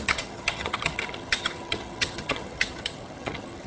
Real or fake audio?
fake